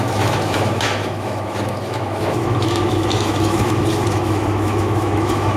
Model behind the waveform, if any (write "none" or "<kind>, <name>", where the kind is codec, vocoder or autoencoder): autoencoder, DAC-VAE